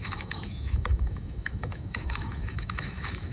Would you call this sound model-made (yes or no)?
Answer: yes